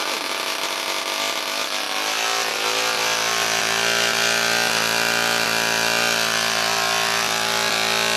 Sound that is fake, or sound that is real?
real